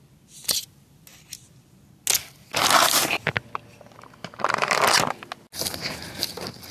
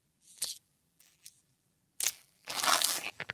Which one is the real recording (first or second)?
first